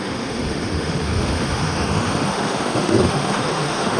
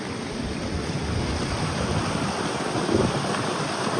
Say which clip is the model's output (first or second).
first